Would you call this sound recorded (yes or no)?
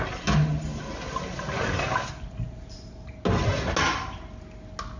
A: yes